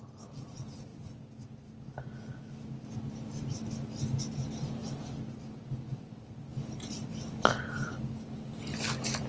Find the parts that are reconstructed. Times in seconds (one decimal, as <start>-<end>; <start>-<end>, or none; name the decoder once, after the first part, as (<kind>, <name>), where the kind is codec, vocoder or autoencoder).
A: none